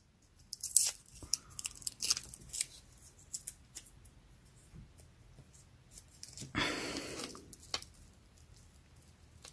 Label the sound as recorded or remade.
recorded